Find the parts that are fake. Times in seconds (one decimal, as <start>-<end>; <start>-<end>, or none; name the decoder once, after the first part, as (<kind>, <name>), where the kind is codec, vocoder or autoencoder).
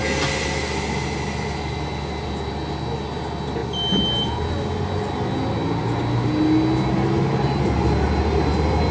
none